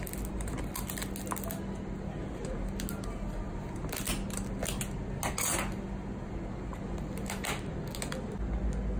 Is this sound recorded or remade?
recorded